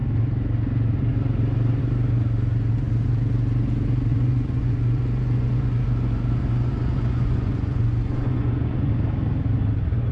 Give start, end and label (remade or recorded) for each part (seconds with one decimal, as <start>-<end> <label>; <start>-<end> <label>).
0.0-4.1 recorded; 4.1-8.9 remade; 8.9-10.1 recorded